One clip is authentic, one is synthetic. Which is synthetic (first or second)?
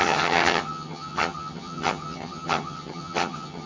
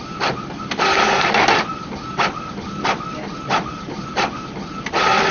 first